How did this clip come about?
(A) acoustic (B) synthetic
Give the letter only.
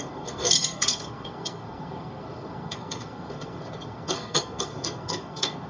B